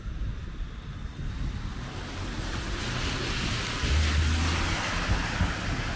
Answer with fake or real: real